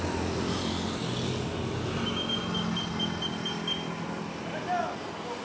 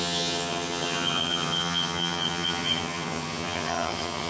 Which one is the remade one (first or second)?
second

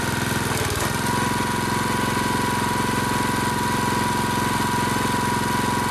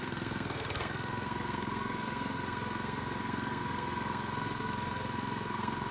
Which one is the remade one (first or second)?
second